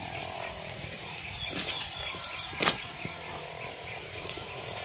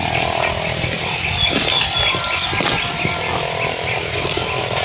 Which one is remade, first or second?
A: first